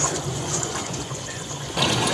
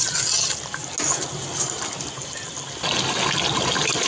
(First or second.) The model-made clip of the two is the first